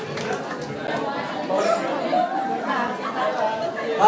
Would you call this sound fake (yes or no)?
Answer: no